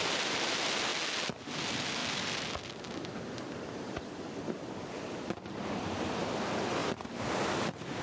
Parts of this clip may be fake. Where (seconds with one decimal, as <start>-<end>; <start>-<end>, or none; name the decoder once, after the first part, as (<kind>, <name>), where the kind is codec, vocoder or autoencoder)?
0.0-0.9 (vocoder, BigVGAN v2); 1.5-6.8; 7.5-8.0